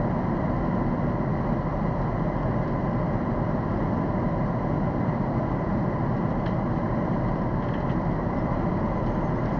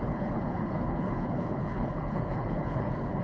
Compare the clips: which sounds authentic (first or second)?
first